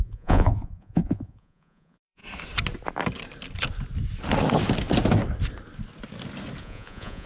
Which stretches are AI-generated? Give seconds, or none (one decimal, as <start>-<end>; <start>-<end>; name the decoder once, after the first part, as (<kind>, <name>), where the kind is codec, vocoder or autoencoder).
0.0-2.2 (vocoder, Vocos); 6.6-7.3